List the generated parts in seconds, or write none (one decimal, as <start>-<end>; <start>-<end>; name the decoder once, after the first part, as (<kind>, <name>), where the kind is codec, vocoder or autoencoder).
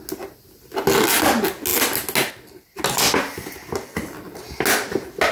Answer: none